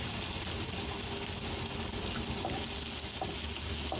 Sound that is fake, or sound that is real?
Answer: real